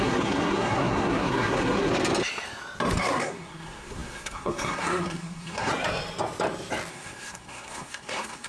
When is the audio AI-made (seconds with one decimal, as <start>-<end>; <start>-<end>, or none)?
0.0-1.9; 3.0-5.7; 6.9-8.5